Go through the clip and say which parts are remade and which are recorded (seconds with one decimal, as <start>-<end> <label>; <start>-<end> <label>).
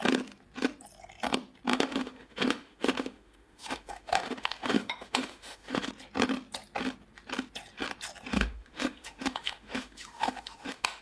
0.0-1.7 recorded; 1.7-5.9 remade; 5.9-8.3 recorded; 8.3-11.0 remade